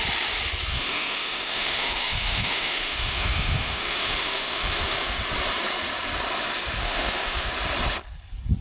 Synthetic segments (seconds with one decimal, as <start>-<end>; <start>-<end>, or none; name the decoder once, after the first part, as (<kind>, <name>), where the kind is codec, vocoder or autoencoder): 0.7-5.2 (autoencoder, DAC-VAE); 6.8-7.5